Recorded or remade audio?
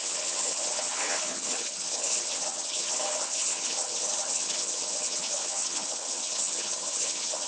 remade